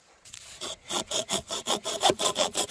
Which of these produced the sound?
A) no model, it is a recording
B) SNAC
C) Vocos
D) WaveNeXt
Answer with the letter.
C